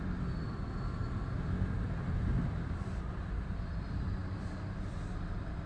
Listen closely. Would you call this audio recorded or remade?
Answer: remade